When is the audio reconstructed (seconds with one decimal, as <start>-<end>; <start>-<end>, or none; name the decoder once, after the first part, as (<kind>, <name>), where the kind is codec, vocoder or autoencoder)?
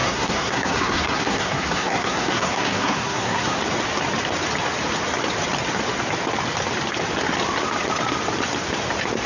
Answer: 0.0-3.6 (codec, SNAC)